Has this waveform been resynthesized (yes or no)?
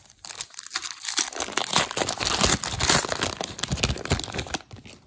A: no